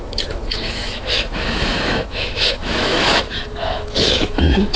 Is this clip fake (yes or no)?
yes